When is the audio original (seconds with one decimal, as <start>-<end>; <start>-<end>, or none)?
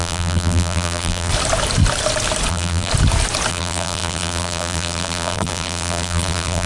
1.3-2.5; 2.9-3.5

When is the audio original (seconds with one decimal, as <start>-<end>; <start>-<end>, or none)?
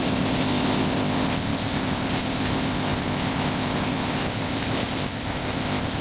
none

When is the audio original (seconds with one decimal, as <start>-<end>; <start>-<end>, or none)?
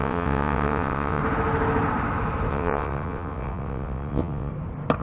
1.2-2.5; 4.5-5.0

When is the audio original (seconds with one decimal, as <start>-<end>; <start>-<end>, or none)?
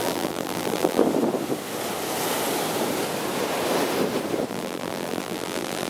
1.0-4.5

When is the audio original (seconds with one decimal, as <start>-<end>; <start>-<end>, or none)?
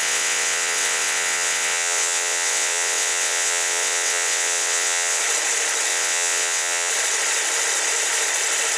5.2-5.9; 6.9-8.8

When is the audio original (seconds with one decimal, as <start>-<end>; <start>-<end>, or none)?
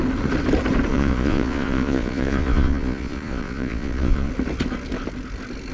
0.0-0.9; 4.3-5.7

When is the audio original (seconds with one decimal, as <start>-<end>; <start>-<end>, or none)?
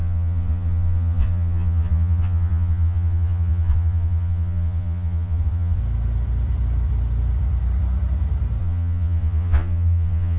5.8-8.6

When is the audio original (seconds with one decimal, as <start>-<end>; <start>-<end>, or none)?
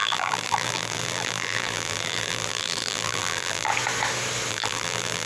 3.7-4.5